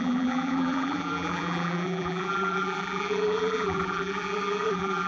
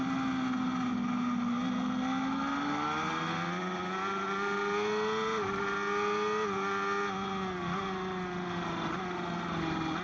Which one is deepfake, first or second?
first